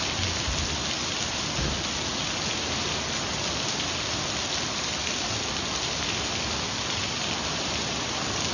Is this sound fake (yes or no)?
no